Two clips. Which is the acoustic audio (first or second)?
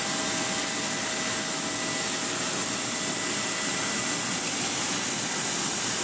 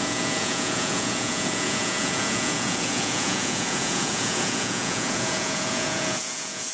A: first